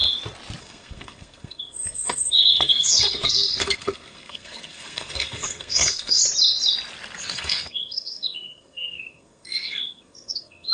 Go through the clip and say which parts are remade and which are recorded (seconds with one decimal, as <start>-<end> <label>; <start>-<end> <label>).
0.0-0.6 recorded; 0.6-6.2 remade; 6.2-7.2 recorded; 7.2-10.7 remade